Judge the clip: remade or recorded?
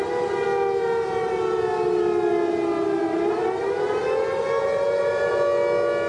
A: recorded